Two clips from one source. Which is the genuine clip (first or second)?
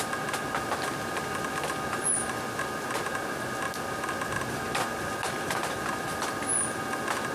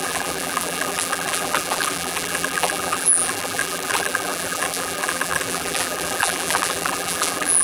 first